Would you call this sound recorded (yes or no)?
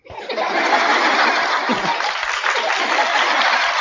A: yes